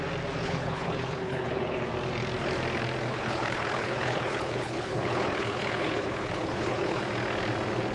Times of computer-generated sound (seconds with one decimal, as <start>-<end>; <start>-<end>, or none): 0.4-1.8; 3.1-7.0